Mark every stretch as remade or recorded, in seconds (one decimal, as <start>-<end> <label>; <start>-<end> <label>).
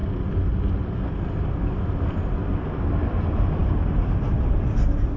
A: 0.0-2.6 recorded; 2.6-5.2 remade